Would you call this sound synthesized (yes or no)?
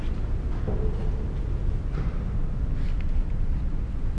no